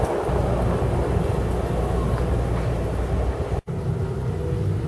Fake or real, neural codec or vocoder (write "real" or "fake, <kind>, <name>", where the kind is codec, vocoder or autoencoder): real